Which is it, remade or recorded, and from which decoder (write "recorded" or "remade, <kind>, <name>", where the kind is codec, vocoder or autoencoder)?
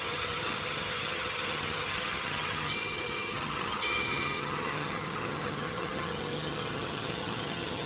remade, vocoder, HiFi-GAN